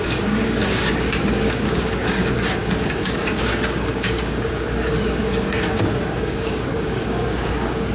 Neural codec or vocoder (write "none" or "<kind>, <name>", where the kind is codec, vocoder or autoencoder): codec, DAC